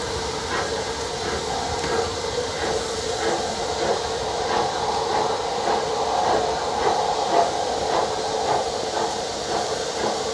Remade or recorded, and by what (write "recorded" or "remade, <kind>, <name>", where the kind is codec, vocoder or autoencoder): recorded